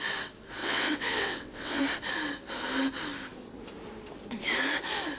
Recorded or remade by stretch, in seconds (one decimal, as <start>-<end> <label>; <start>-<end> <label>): 0.0-0.6 recorded; 0.6-1.8 remade; 1.8-5.2 recorded